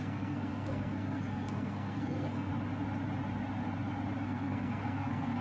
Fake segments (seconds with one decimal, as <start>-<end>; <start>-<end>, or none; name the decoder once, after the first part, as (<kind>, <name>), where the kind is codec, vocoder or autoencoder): 0.0-2.5 (codec, SNAC); 4.2-5.4